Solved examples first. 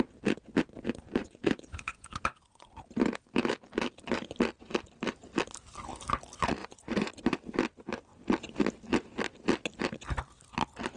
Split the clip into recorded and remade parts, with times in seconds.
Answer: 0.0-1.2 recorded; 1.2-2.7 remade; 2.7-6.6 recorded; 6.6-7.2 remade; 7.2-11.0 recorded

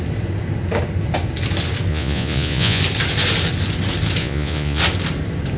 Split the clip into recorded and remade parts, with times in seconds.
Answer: 0.0-1.9 recorded; 1.9-2.8 remade; 2.8-4.2 recorded; 4.2-4.8 remade; 4.8-5.6 recorded

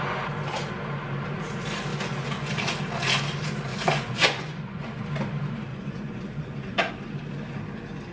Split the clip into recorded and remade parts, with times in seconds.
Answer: 0.0-1.9 recorded; 1.9-2.5 remade; 2.5-3.7 recorded; 3.7-5.0 remade; 5.0-5.7 recorded; 5.7-6.9 remade; 6.9-8.1 recorded

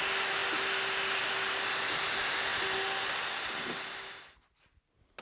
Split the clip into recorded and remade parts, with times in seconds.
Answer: 0.0-5.2 recorded